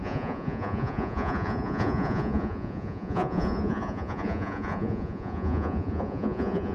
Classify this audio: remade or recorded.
remade